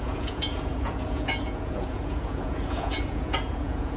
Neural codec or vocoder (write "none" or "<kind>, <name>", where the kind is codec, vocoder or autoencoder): vocoder, Vocos